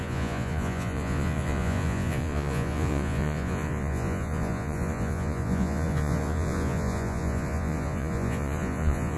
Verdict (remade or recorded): remade